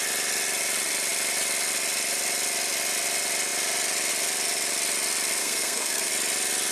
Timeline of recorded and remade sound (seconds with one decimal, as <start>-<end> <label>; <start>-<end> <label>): 0.0-5.4 recorded; 5.4-6.1 remade; 6.1-6.7 recorded